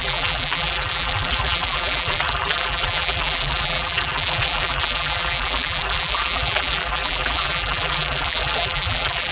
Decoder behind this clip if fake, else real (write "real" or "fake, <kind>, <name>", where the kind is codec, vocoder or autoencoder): fake, vocoder, BigVGAN v2